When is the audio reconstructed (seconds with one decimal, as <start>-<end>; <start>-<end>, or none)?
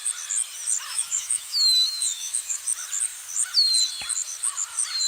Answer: 0.9-2.6